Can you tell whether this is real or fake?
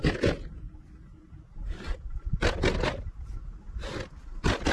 real